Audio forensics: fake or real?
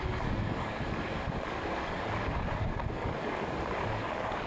fake